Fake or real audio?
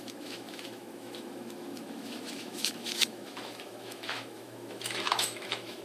fake